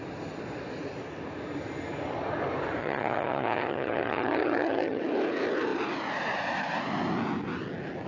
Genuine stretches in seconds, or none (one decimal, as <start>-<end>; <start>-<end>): 0.0-2.8; 5.0-8.1